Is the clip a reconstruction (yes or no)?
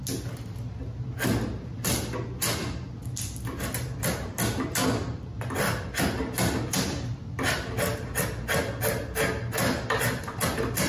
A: no